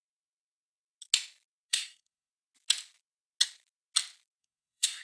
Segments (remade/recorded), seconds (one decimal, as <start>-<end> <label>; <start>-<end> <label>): 0.0-1.7 recorded; 1.7-2.3 remade; 2.3-4.4 recorded; 4.4-5.0 remade